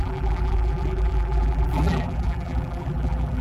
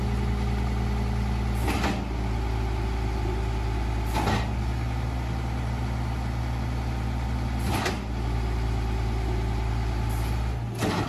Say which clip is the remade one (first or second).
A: first